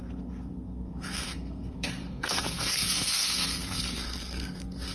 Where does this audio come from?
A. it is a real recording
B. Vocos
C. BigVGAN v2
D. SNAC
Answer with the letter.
D